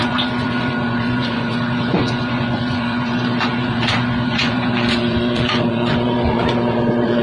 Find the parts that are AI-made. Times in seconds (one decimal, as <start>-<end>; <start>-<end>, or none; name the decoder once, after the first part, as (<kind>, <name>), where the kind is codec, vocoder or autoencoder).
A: 0.0-7.2 (vocoder, Vocos)